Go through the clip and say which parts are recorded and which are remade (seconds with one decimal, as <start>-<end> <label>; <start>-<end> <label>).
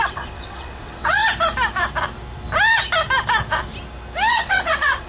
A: 0.0-1.2 remade; 1.2-4.3 recorded; 4.3-5.1 remade